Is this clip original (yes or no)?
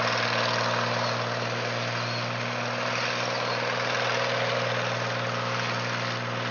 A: yes